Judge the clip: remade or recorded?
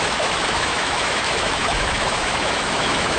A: remade